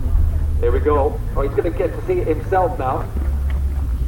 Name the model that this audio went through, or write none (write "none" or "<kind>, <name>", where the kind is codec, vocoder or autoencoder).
none